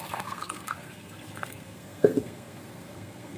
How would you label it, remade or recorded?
remade